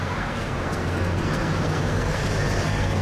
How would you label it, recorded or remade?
remade